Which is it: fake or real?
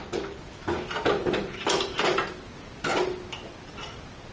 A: real